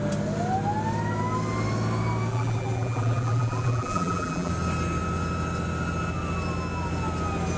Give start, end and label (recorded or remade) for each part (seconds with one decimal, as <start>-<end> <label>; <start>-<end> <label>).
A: 0.0-2.3 recorded; 2.3-4.5 remade; 4.5-7.6 recorded